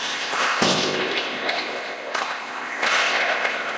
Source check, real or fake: fake